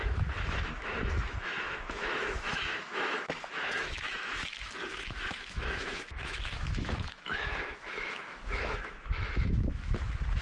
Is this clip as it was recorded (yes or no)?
no